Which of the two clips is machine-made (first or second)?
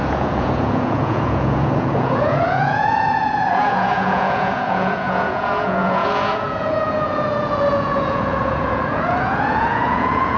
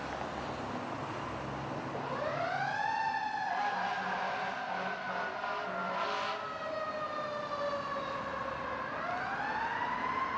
first